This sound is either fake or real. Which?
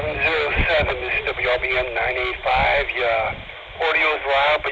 real